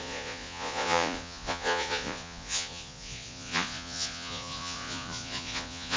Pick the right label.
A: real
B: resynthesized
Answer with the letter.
B